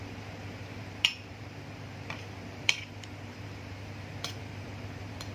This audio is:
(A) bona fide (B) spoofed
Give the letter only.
B